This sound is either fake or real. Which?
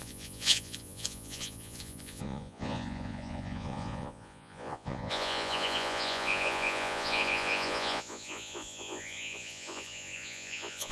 fake